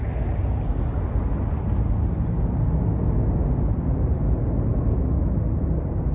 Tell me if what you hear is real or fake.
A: real